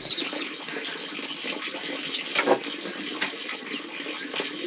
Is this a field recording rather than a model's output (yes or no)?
yes